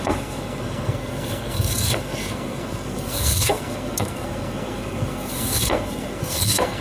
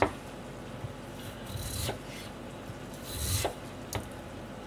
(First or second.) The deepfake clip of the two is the first